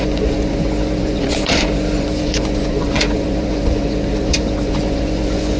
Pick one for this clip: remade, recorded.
remade